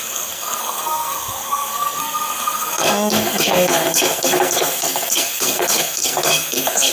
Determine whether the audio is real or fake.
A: fake